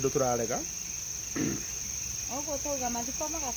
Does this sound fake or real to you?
real